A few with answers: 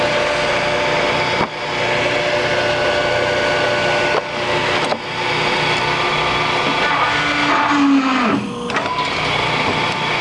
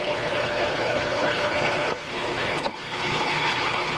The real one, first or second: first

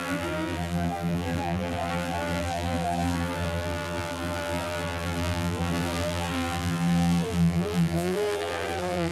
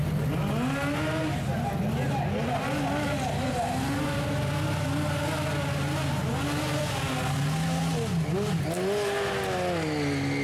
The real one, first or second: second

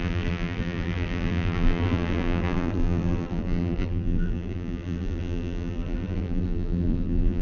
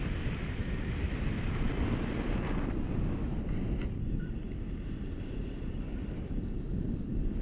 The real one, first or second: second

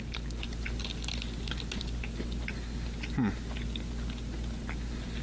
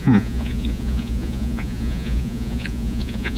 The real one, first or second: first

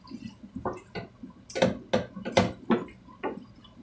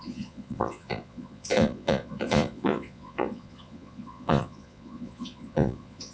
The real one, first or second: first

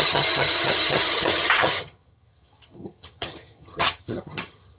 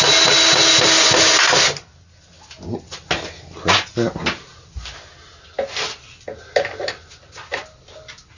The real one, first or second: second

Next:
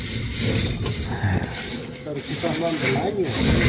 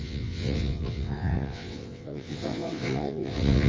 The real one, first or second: first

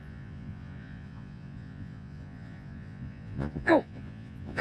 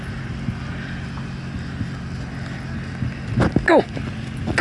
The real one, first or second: second